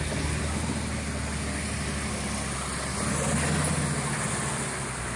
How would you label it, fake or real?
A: real